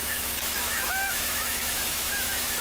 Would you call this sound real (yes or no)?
no